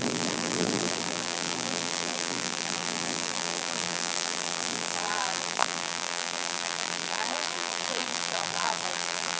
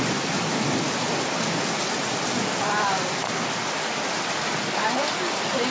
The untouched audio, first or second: second